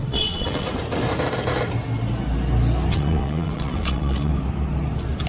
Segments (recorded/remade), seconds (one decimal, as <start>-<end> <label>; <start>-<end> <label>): 0.0-0.7 remade; 0.7-2.9 recorded; 2.9-4.3 remade; 4.3-5.3 recorded